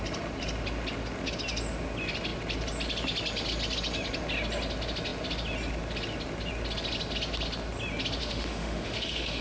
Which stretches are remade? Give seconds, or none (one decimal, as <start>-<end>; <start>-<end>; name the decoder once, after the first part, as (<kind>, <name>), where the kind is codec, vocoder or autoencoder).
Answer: 8.2-9.4 (autoencoder, DAC-VAE)